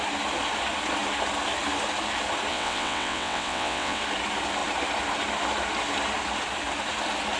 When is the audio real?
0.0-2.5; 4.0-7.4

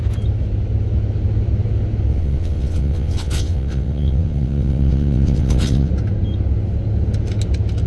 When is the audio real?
0.0-2.1; 5.9-7.9